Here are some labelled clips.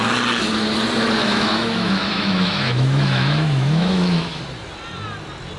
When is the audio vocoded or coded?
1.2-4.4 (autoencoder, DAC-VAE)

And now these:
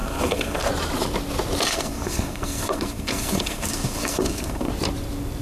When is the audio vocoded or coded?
0.0-0.7 (codec, SNAC); 1.7-4.7

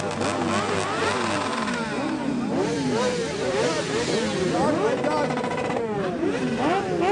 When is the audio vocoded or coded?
1.5-4.1 (vocoder, BigVGAN v2); 5.5-6.4

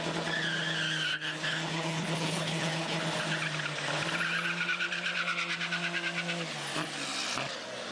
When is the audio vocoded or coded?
1.1-3.0 (codec, HILCodec)

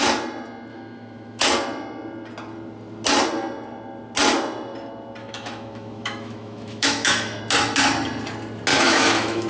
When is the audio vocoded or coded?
0.7-1.5 (autoencoder, DAC-VAE); 5.2-7.4; 8.7-9.5

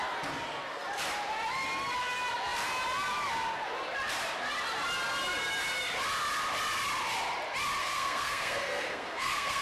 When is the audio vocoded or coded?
7.8-9.6 (codec, SNAC)

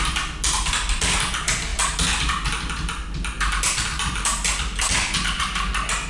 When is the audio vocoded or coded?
none